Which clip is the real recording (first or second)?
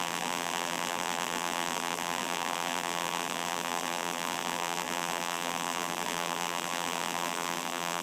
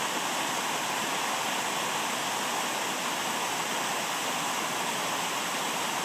second